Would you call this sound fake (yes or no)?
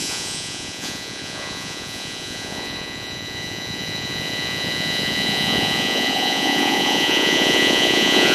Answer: yes